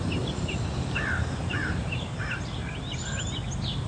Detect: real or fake real